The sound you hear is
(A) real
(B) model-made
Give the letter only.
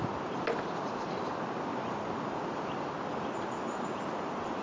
A